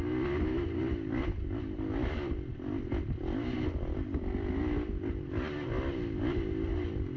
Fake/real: real